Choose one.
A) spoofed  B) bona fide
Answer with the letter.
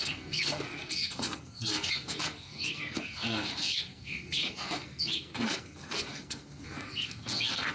A